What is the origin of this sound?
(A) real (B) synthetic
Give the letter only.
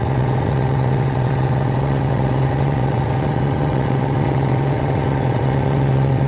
B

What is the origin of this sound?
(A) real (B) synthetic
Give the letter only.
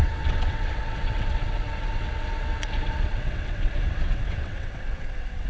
B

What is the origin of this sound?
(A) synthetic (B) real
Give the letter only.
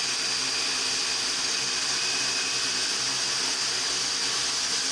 B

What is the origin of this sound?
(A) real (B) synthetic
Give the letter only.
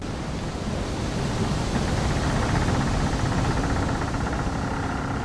A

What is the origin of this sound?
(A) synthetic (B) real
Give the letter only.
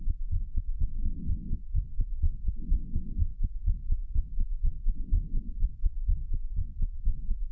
A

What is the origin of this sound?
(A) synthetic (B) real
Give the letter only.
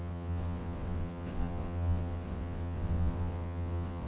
A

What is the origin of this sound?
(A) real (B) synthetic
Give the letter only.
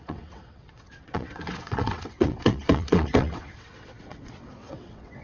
B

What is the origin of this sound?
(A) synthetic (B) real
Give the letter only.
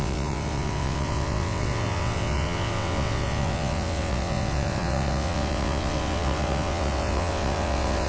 A